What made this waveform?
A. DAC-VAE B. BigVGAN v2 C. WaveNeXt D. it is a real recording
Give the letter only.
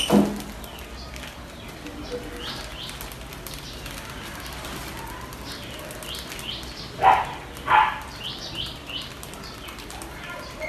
D